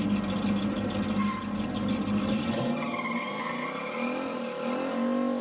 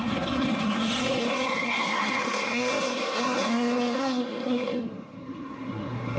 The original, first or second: first